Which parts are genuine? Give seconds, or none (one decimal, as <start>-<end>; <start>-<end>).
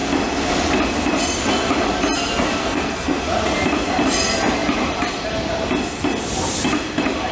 0.0-2.6; 3.2-7.3